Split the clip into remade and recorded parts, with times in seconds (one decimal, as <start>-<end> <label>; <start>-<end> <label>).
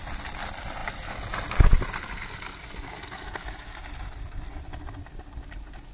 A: 0.0-5.9 recorded